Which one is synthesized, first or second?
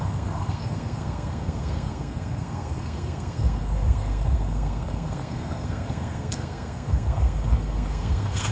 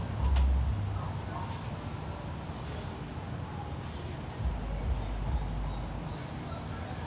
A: first